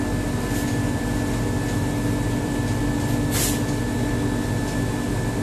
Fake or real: real